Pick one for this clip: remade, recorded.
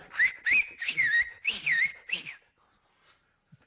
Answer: recorded